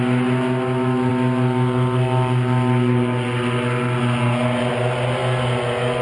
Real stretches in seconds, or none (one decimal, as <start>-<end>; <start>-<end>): 0.0-6.0